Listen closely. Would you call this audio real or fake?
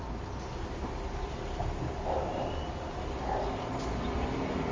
real